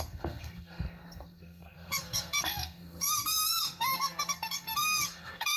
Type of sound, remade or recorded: remade